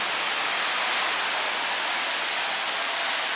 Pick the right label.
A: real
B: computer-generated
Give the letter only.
A